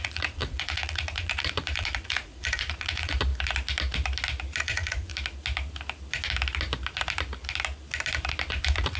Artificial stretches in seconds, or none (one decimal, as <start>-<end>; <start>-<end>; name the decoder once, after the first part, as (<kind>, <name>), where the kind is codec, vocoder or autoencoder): 0.0-3.3 (vocoder, Vocos); 4.6-5.1; 8.5-9.0